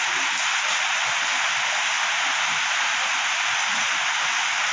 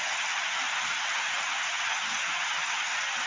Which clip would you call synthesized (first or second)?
second